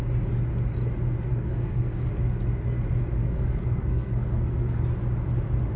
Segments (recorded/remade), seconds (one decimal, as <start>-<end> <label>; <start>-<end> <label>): 0.0-1.3 recorded; 1.3-2.1 remade; 2.1-3.2 recorded; 3.2-4.8 remade; 4.8-5.8 recorded